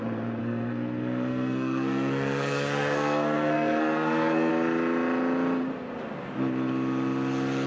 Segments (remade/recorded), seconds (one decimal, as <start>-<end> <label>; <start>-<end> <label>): 0.0-0.4 recorded; 0.4-4.5 remade; 4.5-7.7 recorded